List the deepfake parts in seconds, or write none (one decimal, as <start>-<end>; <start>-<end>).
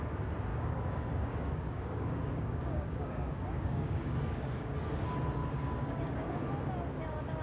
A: 0.5-4.9; 5.4-6.5